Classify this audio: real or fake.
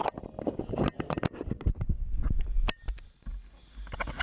real